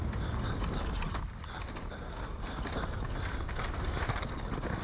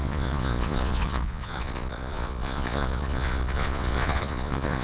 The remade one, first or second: second